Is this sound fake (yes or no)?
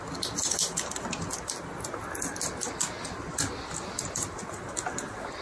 no